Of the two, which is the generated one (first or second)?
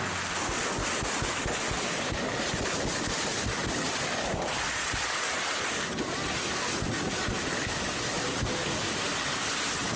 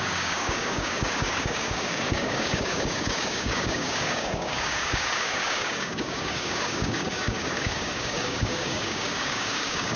second